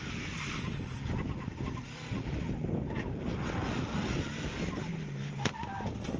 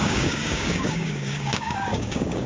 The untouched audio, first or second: first